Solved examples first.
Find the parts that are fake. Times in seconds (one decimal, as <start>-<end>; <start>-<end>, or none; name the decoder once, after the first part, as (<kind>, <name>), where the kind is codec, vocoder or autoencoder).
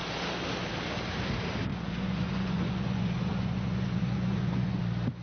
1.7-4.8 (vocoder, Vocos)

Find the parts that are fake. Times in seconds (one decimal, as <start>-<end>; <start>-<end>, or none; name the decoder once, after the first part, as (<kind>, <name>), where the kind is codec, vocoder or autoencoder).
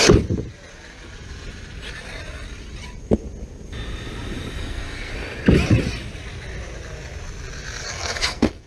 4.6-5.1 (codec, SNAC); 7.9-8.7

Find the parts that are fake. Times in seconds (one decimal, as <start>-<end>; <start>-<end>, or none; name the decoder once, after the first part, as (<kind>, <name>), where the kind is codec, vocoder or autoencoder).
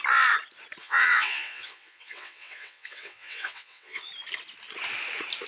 0.8-4.1 (vocoder, WaveNeXt)